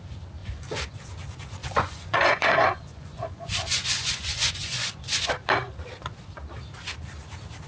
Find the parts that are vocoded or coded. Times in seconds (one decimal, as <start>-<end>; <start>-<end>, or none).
0.4-1.0; 1.6-5.3